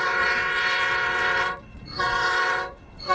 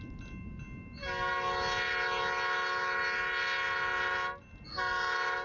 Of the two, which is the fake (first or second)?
first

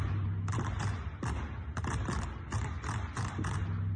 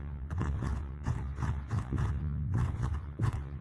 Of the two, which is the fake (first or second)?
second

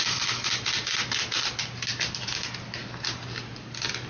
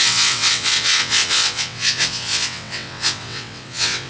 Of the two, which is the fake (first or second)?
second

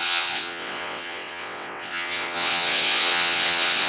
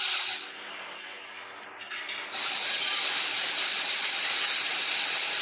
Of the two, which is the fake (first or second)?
first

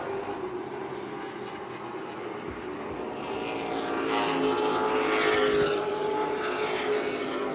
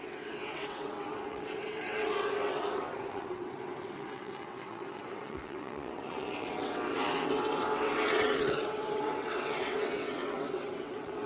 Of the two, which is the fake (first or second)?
second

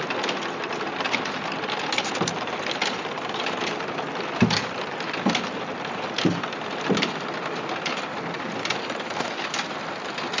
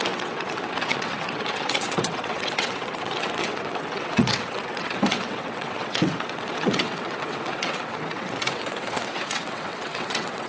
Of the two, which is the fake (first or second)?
second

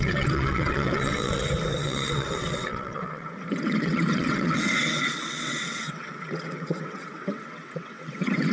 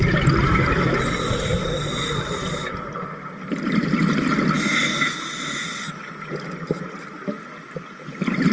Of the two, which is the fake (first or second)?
first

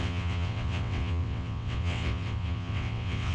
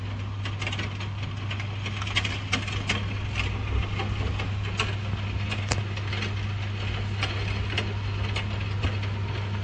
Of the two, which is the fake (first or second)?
first